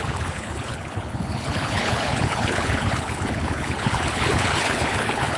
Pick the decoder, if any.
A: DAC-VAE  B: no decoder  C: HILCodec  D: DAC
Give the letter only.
C